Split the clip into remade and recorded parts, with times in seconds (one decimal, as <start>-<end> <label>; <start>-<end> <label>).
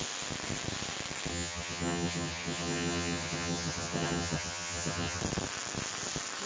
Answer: 0.0-1.3 recorded; 1.3-5.2 remade; 5.2-6.5 recorded